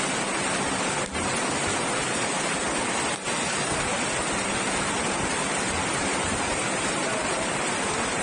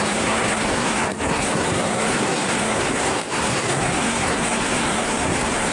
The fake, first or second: second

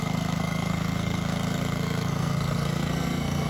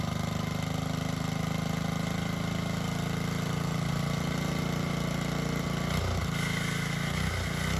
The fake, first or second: first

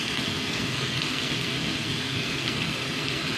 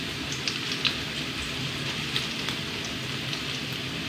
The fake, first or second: first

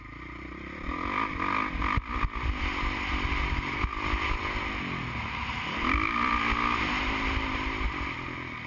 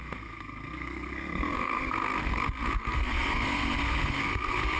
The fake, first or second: second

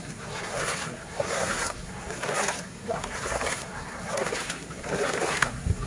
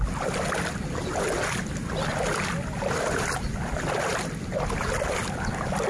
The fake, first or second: first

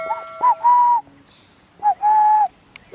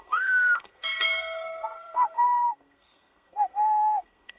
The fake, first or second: second